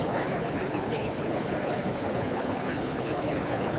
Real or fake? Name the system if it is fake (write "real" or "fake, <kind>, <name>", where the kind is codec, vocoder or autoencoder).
fake, codec, HILCodec